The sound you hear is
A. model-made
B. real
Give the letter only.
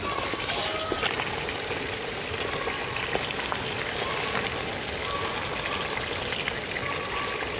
B